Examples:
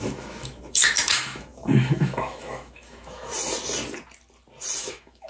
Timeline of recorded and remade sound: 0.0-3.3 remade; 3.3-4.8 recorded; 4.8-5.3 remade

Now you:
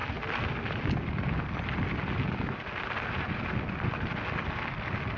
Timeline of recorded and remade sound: 0.0-5.2 recorded